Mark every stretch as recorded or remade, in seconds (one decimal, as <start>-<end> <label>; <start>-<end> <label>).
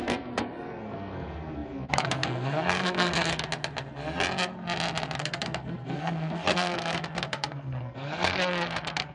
0.0-3.5 remade; 3.5-5.2 recorded; 5.2-9.1 remade